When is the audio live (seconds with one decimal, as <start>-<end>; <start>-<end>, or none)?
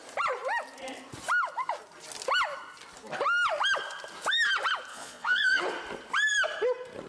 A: 0.0-4.9; 5.6-7.1